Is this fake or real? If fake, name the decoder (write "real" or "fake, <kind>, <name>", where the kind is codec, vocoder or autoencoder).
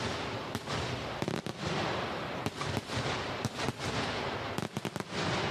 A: real